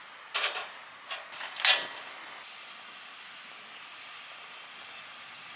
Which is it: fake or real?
real